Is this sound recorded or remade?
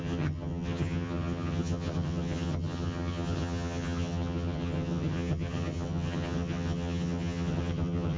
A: remade